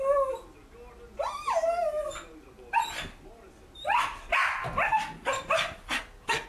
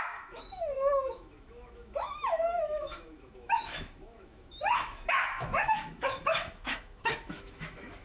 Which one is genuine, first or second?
first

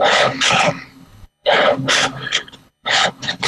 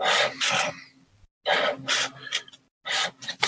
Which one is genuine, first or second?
second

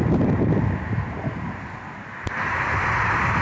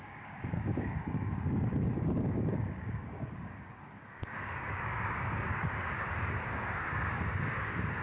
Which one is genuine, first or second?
first